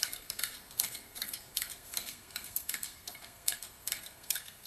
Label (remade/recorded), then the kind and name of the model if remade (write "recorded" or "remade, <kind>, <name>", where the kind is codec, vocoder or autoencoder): remade, codec, SNAC